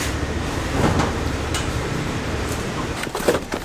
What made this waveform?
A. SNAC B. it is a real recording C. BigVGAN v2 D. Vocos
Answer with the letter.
C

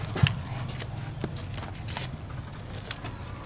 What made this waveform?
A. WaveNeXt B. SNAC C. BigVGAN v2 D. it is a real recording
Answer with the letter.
D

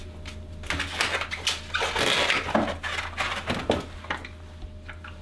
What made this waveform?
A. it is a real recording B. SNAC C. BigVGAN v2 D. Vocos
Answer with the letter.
A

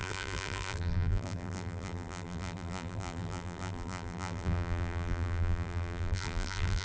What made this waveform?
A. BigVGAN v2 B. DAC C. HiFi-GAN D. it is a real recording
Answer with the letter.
A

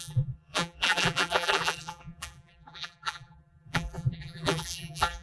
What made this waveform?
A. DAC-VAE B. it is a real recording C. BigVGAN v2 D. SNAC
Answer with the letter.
C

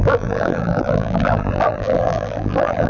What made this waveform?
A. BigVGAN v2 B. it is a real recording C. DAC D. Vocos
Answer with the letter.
A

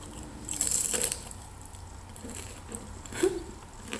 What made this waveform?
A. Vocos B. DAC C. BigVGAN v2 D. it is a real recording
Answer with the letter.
C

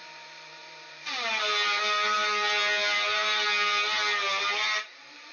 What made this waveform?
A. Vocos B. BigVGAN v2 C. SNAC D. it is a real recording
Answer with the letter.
B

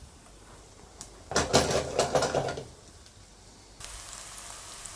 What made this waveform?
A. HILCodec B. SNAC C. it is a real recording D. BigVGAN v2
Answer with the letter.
C